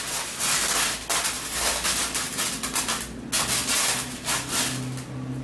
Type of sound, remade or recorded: recorded